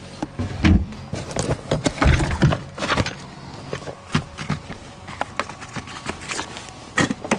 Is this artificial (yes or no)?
no